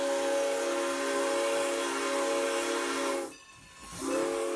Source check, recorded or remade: recorded